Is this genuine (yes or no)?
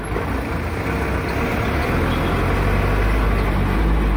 yes